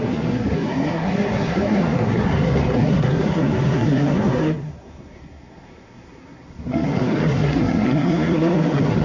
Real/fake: fake